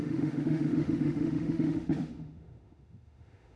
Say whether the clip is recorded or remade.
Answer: remade